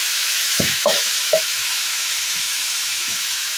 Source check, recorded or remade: remade